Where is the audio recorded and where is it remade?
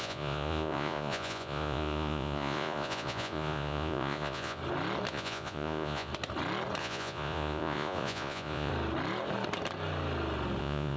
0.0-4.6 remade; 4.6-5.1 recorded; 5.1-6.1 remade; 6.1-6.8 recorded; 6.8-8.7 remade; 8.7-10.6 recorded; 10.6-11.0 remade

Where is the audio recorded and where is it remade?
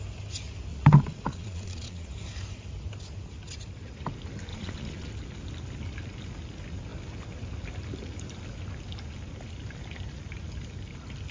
0.0-0.7 recorded; 0.7-2.1 remade; 2.1-4.5 recorded; 4.5-5.1 remade; 5.1-11.3 recorded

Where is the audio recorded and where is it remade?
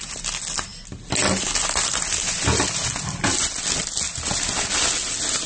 0.0-5.5 recorded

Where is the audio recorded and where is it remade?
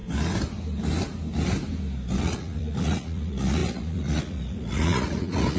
0.0-2.2 recorded; 2.2-5.6 remade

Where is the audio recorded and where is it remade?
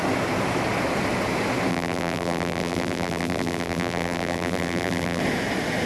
0.0-1.7 recorded; 1.7-5.2 remade; 5.2-5.9 recorded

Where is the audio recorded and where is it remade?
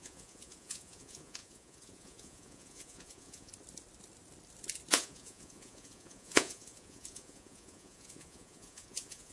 0.0-3.5 remade; 3.5-4.9 recorded; 4.9-9.3 remade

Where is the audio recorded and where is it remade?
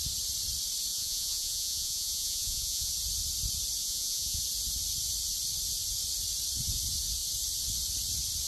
0.0-0.9 recorded; 0.9-2.9 remade; 2.9-3.8 recorded; 3.8-4.4 remade; 4.4-8.5 recorded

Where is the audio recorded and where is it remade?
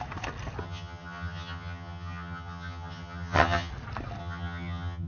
0.0-0.6 recorded; 0.6-3.7 remade; 3.7-4.2 recorded; 4.2-5.1 remade